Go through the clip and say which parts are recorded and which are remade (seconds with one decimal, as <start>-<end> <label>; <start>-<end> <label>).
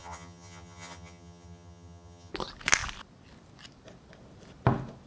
0.0-2.3 remade; 2.3-5.1 recorded